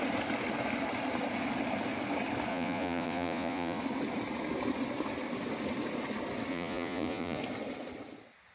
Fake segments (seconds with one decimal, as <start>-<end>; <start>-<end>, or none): 2.5-3.8; 6.5-7.4